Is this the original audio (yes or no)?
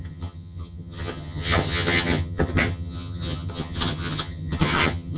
no